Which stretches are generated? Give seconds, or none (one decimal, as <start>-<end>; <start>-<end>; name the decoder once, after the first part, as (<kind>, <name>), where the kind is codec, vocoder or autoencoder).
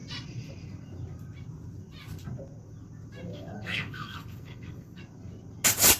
3.3-5.0 (codec, SNAC)